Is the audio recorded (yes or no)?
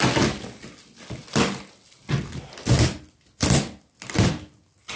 yes